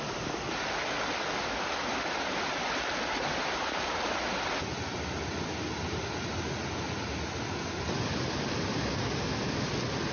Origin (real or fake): real